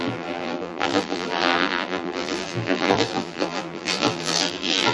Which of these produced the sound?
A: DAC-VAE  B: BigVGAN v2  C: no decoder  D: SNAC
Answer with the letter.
B